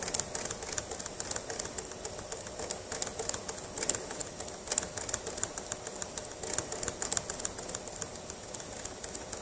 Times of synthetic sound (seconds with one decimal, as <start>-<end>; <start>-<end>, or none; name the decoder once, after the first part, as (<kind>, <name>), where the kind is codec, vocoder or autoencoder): none

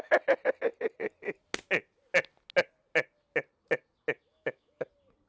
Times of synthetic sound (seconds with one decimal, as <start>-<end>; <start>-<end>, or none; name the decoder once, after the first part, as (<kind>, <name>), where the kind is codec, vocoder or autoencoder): 4.3-4.8 (autoencoder, DAC-VAE)

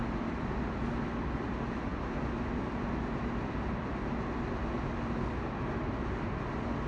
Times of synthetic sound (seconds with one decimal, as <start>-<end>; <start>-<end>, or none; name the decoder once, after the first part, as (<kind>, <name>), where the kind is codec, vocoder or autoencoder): 0.0-0.8 (vocoder, BigVGAN v2)

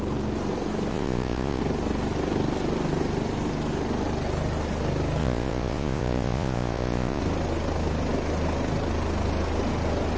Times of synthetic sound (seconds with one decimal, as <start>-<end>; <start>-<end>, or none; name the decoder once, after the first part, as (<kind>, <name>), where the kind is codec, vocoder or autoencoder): 0.9-1.6 (vocoder, Vocos); 5.2-7.2

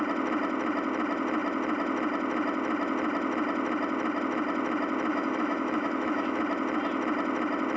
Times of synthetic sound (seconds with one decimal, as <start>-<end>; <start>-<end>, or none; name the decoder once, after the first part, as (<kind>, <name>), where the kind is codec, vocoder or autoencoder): 5.1-6.4 (autoencoder, DAC-VAE)

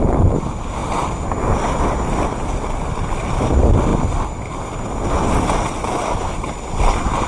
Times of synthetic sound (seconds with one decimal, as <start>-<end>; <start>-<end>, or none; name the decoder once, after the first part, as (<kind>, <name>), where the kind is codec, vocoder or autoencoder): none

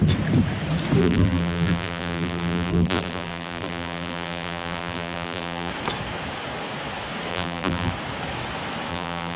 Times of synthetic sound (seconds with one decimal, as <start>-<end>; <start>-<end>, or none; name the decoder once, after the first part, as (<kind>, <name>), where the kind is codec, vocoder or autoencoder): 1.0-5.7 (vocoder, BigVGAN v2); 7.3-7.9; 8.9-9.4

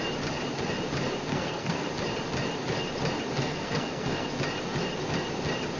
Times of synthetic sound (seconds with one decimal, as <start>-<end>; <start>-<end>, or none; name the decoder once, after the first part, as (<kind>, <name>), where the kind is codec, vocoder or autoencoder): 1.3-1.9 (codec, SNAC); 3.4-4.3